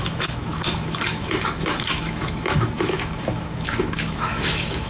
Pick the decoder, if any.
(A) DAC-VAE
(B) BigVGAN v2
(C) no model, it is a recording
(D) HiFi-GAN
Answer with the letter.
A